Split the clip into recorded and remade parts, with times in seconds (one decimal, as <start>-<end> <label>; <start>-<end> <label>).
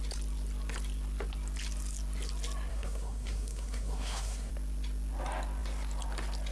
0.0-2.7 recorded; 2.7-4.5 remade; 4.5-6.5 recorded